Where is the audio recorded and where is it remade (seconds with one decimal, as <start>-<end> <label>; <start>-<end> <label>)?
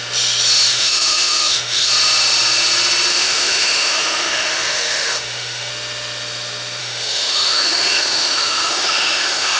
0.0-0.7 recorded; 0.7-1.9 remade; 1.9-3.1 recorded; 3.1-5.7 remade; 5.7-6.8 recorded; 6.8-9.6 remade